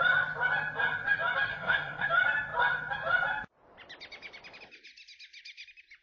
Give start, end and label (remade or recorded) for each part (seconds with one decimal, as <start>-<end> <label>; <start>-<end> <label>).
0.0-1.5 recorded; 1.5-2.1 remade; 2.1-6.0 recorded